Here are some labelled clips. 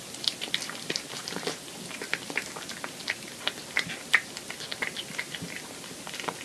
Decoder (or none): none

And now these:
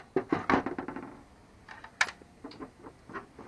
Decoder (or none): none